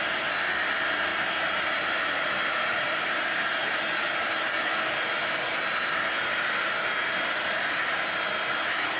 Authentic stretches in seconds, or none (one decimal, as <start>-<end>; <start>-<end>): 0.0-1.1; 4.3-9.0